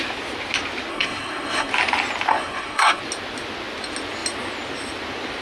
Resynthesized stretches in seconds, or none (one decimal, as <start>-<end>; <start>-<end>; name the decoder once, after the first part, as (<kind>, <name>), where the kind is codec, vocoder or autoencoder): 0.9-1.7 (codec, SNAC); 2.3-3.0